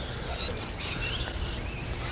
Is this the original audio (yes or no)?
yes